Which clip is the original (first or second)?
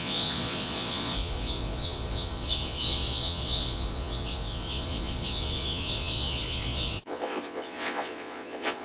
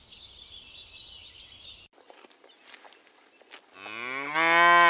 second